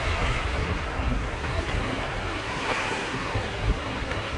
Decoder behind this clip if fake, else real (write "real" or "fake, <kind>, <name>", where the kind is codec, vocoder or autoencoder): fake, codec, SNAC